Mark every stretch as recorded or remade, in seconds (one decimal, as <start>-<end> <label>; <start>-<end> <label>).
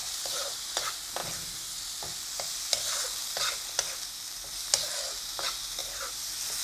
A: 0.0-0.5 remade; 0.5-6.6 recorded